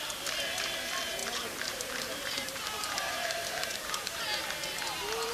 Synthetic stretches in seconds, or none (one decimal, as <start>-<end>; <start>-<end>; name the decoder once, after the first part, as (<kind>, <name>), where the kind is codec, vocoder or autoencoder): 1.2-4.2 (vocoder, BigVGAN v2)

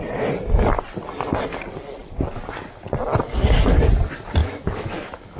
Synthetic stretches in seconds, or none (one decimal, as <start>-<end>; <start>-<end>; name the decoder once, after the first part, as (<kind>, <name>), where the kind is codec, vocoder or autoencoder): 4.4-5.4 (autoencoder, DAC-VAE)

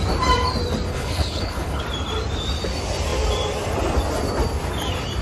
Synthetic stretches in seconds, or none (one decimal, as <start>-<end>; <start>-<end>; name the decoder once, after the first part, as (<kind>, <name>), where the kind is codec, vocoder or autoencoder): 0.9-1.8 (codec, HILCodec)